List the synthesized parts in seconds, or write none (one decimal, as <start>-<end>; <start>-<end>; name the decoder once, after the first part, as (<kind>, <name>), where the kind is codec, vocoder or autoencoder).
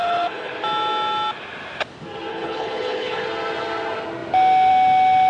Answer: 0.0-0.5 (codec, HILCodec); 2.3-3.2